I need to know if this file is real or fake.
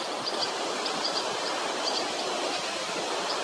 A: fake